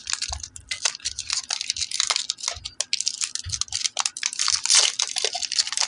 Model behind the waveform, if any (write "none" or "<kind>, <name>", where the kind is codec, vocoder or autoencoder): none